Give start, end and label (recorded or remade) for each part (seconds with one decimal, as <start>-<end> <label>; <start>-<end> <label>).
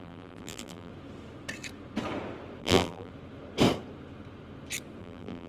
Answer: 0.0-0.9 remade; 0.9-2.6 recorded; 2.6-3.1 remade; 3.1-5.0 recorded; 5.0-5.5 remade